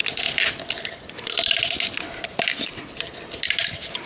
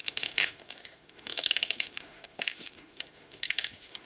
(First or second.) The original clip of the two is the first